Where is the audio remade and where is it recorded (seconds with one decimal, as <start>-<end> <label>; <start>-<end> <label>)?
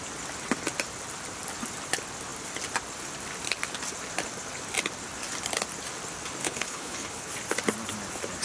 0.0-6.4 recorded; 6.4-7.3 remade; 7.3-8.4 recorded